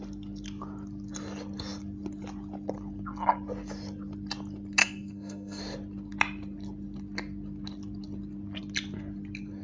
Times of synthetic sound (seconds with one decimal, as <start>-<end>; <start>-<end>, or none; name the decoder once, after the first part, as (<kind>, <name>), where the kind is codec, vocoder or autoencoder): 4.8-5.6 (codec, SNAC)